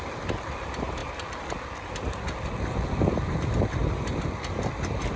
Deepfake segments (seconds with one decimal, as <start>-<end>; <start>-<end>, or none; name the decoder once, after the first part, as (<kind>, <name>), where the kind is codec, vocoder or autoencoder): none